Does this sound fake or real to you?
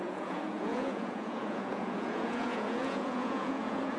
fake